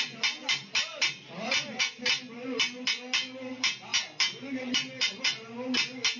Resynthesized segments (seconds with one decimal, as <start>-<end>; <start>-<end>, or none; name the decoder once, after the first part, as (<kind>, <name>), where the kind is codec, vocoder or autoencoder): none